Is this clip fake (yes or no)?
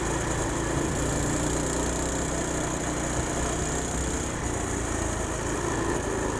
no